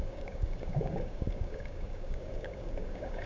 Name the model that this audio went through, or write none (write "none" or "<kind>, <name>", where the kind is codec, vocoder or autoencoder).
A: codec, DAC